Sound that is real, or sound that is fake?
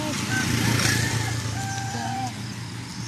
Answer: real